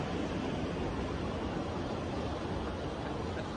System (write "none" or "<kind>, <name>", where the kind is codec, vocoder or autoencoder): none